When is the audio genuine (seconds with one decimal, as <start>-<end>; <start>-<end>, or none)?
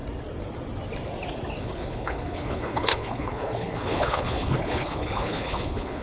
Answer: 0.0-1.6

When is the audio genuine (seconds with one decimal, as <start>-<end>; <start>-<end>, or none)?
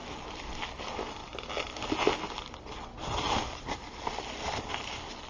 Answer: 0.0-5.3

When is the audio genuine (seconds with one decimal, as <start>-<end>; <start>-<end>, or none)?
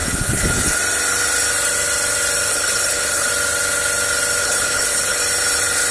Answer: 0.8-2.5; 3.3-4.4; 5.2-5.9